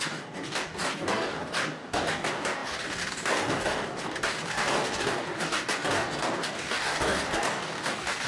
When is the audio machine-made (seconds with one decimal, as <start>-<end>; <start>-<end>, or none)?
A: 0.0-8.3